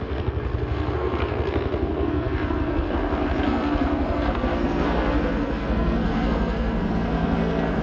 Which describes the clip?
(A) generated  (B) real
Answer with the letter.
A